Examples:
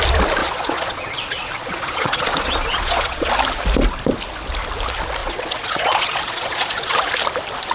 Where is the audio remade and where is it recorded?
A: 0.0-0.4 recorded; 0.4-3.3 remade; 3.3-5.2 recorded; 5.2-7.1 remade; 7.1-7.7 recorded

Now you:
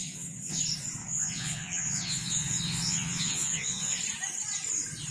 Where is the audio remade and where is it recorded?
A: 0.0-0.6 remade; 0.6-1.0 recorded; 1.0-4.0 remade; 4.0-5.1 recorded

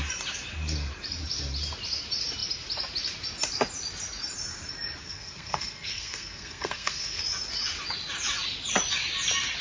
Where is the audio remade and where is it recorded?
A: 0.0-5.0 recorded; 5.0-7.2 remade; 7.2-9.6 recorded

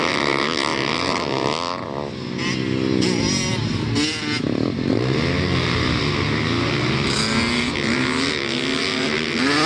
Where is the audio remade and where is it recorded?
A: 0.0-9.7 recorded

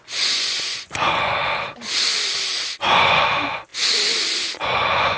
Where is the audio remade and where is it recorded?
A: 0.0-1.4 remade; 1.4-2.8 recorded; 2.8-3.7 remade; 3.7-4.6 recorded; 4.6-5.2 remade

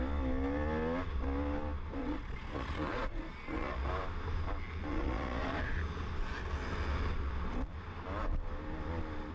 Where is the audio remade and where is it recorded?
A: 0.0-2.0 recorded; 2.0-3.9 remade; 3.9-4.9 recorded; 4.9-5.8 remade; 5.8-9.3 recorded

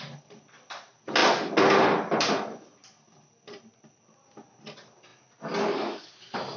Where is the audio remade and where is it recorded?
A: 0.0-6.6 recorded